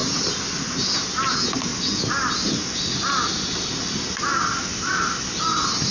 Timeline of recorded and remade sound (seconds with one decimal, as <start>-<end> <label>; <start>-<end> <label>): 0.0-5.9 recorded